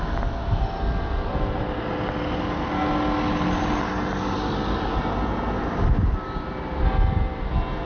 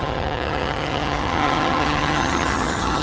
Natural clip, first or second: first